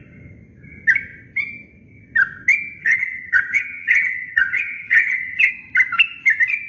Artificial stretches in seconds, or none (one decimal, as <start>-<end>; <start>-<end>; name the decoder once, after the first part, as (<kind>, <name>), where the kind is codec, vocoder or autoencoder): 2.8-5.5 (vocoder, HiFi-GAN)